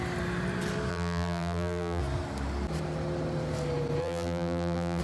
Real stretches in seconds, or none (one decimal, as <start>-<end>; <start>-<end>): 0.0-0.9; 2.0-4.0